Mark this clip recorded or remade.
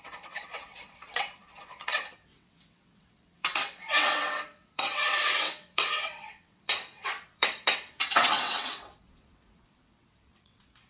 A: remade